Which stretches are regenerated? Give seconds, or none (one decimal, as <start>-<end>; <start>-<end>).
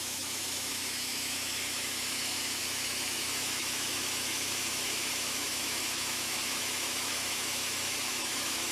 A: 0.0-8.7